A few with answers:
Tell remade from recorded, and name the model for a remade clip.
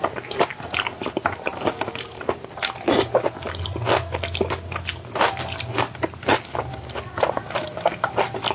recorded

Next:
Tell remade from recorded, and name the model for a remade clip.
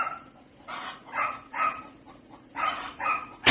remade, vocoder, Vocos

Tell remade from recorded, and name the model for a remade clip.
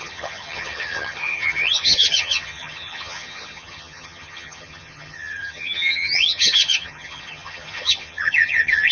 remade, vocoder, HiFi-GAN